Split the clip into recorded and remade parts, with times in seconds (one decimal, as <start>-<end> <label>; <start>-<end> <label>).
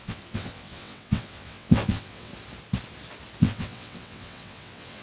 0.0-2.3 remade; 2.3-3.4 recorded; 3.4-5.0 remade